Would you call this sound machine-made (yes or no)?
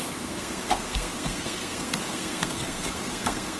yes